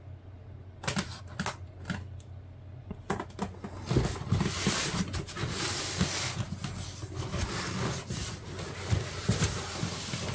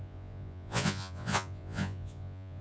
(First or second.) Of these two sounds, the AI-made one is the second